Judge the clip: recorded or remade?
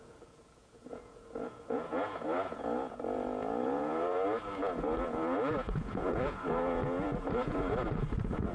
remade